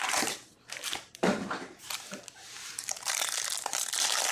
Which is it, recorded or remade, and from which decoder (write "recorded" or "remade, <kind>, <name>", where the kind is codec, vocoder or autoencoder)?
remade, vocoder, BigVGAN v2